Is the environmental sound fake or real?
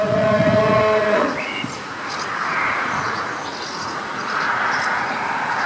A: fake